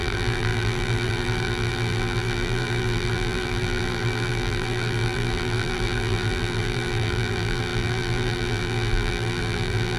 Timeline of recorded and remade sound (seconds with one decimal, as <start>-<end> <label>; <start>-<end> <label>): 0.0-10.0 remade